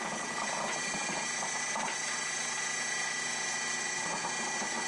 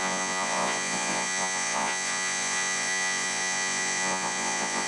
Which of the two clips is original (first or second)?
first